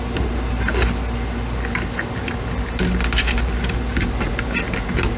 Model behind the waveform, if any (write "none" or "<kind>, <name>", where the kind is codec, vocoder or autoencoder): none